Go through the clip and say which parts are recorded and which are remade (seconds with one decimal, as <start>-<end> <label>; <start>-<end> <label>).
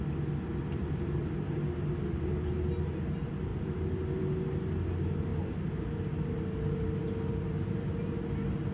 0.0-0.5 recorded; 0.5-1.2 remade; 1.2-3.5 recorded; 3.5-4.2 remade; 4.2-7.0 recorded; 7.0-8.0 remade; 8.0-8.7 recorded